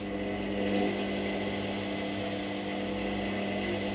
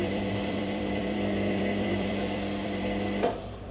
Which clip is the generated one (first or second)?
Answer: second